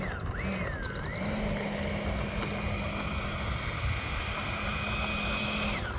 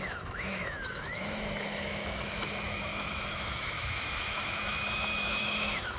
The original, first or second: first